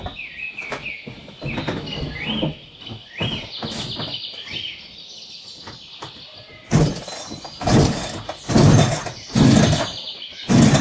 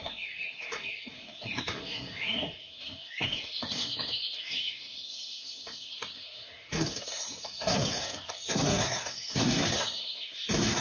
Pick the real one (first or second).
first